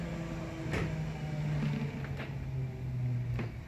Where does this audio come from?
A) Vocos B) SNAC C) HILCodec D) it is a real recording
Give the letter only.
D